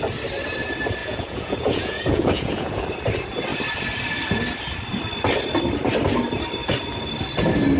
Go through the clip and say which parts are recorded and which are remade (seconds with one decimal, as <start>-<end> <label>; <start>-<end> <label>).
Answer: 0.0-1.0 recorded; 1.0-2.8 remade; 2.8-7.8 recorded